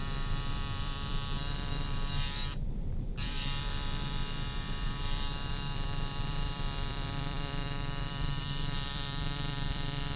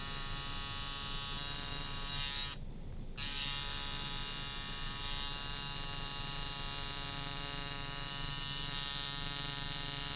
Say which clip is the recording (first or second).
second